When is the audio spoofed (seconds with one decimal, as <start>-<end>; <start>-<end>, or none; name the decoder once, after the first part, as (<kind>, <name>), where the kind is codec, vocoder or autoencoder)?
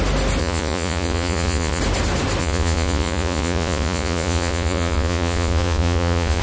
0.4-1.8 (vocoder, Vocos); 2.4-6.4